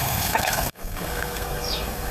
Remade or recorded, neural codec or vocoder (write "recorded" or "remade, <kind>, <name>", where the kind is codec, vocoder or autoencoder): remade, codec, SNAC